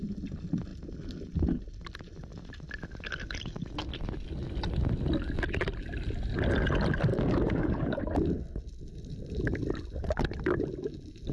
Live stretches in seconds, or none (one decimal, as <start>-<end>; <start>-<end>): 0.0-7.1; 8.0-11.3